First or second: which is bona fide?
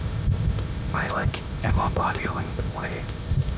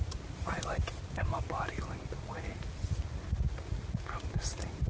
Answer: second